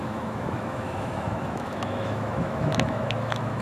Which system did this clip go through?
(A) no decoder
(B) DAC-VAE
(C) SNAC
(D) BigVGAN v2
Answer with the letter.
B